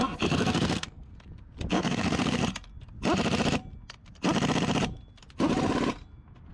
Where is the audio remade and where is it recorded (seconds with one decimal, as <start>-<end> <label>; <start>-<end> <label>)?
0.0-1.1 remade; 1.1-1.7 recorded; 1.7-2.4 remade; 2.4-6.5 recorded